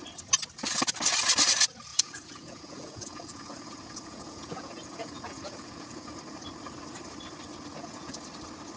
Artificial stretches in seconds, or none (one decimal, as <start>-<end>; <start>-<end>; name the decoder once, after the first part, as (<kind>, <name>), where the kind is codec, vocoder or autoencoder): 1.9-6.2 (vocoder, Vocos); 7.7-8.2

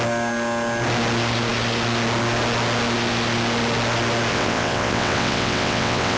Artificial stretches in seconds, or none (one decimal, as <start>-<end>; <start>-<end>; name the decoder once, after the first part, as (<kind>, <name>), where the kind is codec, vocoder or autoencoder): 4.3-6.2 (vocoder, WaveNeXt)